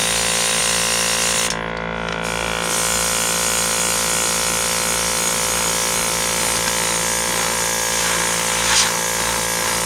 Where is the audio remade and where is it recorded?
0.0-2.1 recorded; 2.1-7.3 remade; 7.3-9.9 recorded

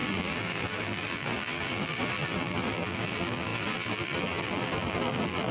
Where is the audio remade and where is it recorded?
0.0-5.5 remade

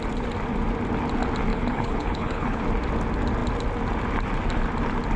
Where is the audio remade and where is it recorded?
0.0-1.5 recorded; 1.5-2.6 remade; 2.6-5.2 recorded

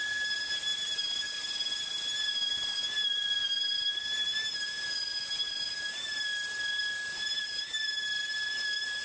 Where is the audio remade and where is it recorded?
0.0-9.0 recorded

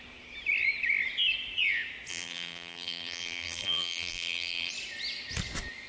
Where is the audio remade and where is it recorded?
0.0-2.1 recorded; 2.1-4.7 remade; 4.7-5.9 recorded

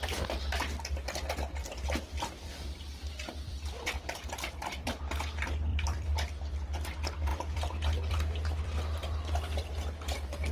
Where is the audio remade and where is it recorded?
0.0-1.6 recorded; 1.6-5.0 remade; 5.0-5.7 recorded; 5.7-6.6 remade; 6.6-7.3 recorded; 7.3-8.8 remade; 8.8-10.5 recorded

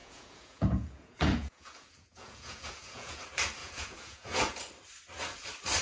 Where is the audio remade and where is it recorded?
0.0-3.2 remade; 3.2-3.6 recorded; 3.6-4.6 remade; 4.6-5.8 recorded